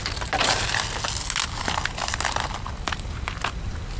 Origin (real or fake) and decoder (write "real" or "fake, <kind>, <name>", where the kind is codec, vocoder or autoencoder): real